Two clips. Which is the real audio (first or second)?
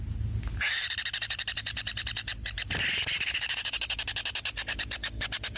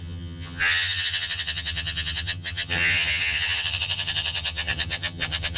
first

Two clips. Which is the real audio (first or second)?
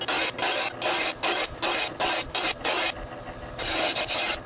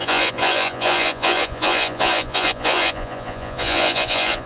first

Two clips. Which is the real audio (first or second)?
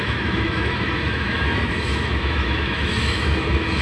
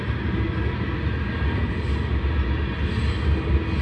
second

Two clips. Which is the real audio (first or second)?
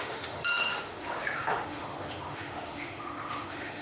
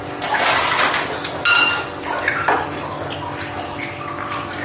second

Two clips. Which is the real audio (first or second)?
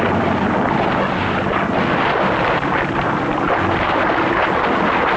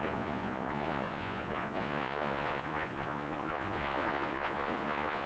first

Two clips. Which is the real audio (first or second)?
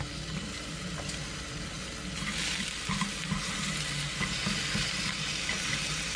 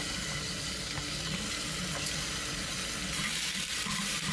first